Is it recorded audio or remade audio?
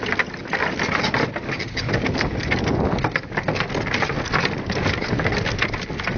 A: recorded